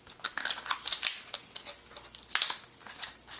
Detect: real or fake real